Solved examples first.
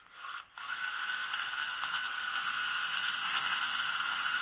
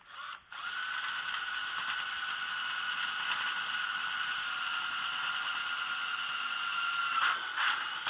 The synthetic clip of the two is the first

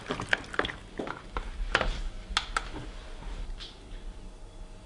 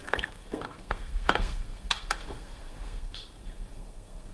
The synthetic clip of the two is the second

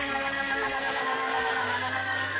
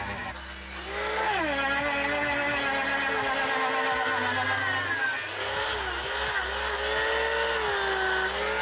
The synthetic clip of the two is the first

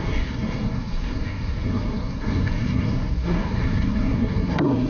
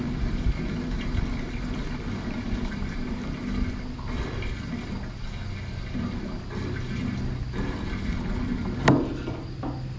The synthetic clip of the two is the first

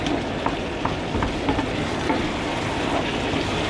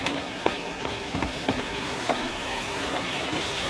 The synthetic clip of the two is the second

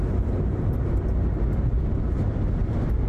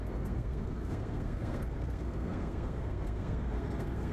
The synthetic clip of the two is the second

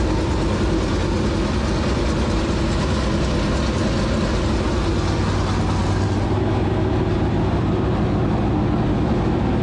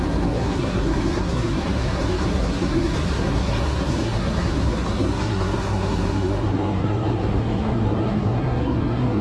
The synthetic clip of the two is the second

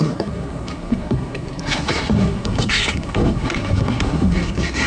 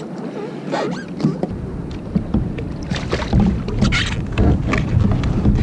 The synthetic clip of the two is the first